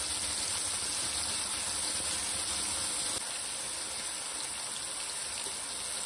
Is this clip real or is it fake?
real